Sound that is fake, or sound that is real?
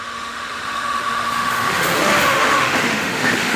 fake